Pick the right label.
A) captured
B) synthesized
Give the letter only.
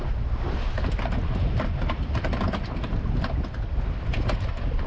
A